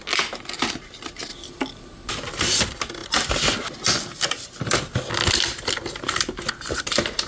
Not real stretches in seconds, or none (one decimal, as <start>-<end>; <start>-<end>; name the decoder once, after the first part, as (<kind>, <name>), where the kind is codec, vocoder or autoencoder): 1.3-2.1 (vocoder, BigVGAN v2)